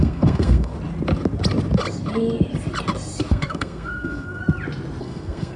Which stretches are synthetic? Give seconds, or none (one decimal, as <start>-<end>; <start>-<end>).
0.0-0.7; 3.3-4.4; 5.0-5.6